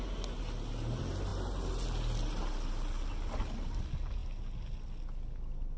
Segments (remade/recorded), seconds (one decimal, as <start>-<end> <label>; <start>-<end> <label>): 0.0-5.8 recorded